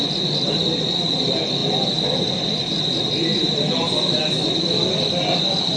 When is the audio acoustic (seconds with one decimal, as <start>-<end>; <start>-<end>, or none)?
0.0-5.8